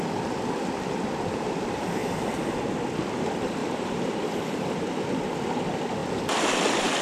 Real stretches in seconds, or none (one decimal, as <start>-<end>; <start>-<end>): 0.0-3.6; 4.8-7.0